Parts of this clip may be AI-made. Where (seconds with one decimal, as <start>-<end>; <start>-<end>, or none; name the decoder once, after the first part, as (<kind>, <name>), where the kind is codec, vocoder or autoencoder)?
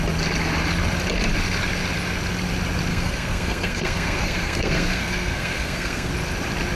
2.9-6.1 (codec, SNAC)